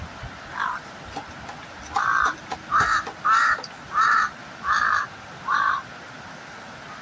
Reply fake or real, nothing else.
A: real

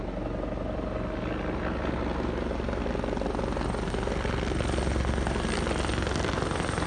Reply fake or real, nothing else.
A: real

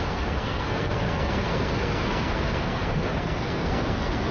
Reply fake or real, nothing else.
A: fake